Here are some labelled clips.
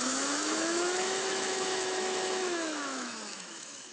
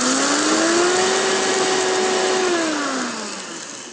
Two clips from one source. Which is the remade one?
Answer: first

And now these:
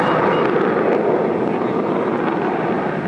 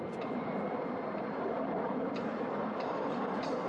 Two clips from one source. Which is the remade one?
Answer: second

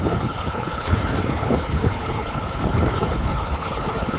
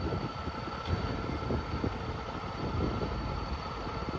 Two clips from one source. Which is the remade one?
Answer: first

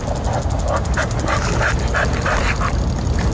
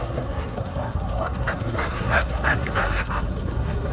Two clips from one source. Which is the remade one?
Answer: second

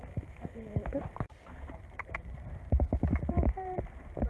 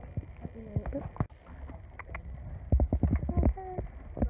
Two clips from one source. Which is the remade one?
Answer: first